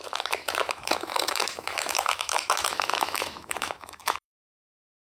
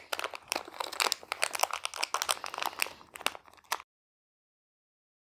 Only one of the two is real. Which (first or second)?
second